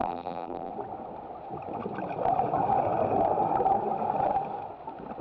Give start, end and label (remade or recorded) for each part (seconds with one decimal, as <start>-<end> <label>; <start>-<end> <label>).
0.0-0.7 remade; 0.7-5.2 recorded